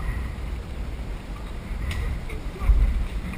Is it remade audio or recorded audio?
remade